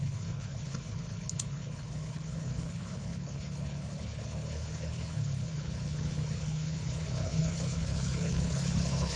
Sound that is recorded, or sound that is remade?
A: remade